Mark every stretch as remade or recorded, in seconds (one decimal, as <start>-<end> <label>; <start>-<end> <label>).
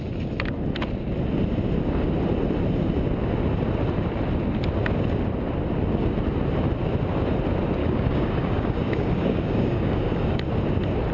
0.0-7.8 recorded; 7.8-10.4 remade; 10.4-11.1 recorded